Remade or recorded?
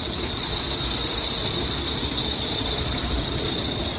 remade